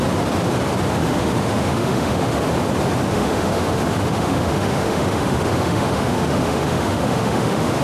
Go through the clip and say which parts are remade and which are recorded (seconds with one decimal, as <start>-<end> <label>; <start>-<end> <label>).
0.0-1.0 recorded; 1.0-2.4 remade; 2.4-3.1 recorded; 3.1-7.8 remade